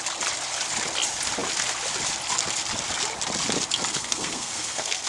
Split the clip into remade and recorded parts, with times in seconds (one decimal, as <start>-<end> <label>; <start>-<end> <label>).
0.0-3.9 recorded; 3.9-5.1 remade